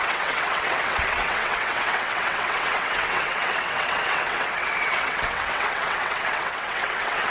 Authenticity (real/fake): fake